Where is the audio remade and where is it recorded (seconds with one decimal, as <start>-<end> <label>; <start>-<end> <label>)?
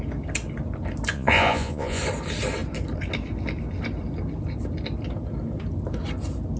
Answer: 0.0-1.1 recorded; 1.1-2.0 remade; 2.0-6.6 recorded